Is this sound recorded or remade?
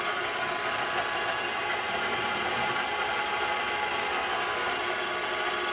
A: recorded